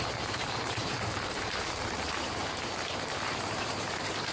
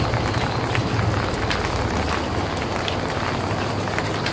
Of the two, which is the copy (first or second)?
first